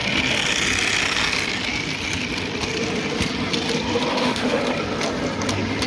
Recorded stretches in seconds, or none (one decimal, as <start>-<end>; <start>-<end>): 0.0-4.1; 4.6-5.9

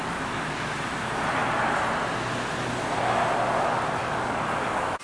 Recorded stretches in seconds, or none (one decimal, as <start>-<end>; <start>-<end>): 0.8-4.0